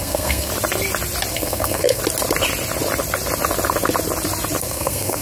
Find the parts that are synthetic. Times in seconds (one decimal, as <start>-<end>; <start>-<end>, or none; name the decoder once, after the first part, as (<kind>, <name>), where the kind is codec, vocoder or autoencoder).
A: 0.0-0.5 (codec, SNAC); 1.3-2.0; 4.6-5.2